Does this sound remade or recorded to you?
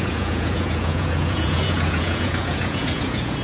remade